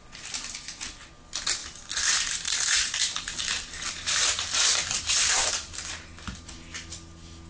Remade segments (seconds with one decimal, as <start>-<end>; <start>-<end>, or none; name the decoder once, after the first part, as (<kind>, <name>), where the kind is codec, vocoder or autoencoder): 1.6-6.1 (vocoder, BigVGAN v2)